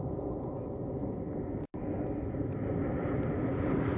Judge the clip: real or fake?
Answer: real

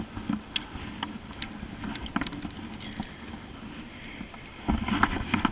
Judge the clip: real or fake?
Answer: real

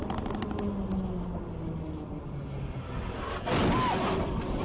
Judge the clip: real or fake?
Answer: real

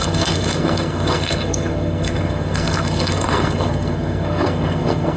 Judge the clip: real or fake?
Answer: fake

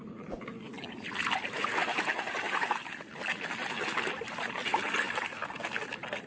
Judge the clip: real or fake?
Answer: real